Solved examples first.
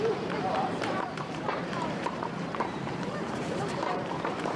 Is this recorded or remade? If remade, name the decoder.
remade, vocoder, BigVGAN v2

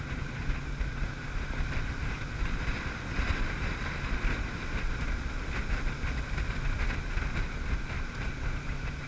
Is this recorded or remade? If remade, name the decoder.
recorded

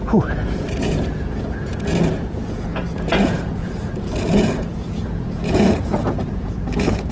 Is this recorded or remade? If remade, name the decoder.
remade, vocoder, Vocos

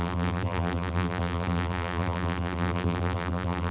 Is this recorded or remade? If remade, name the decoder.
remade, vocoder, BigVGAN v2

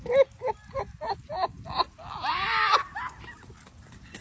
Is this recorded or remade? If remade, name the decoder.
recorded